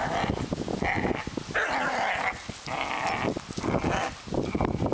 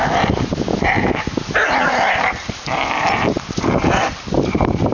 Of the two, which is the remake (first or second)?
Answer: second